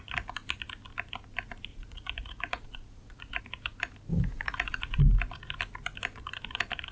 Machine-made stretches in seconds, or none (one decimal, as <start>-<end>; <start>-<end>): 1.7-3.4; 4.1-5.0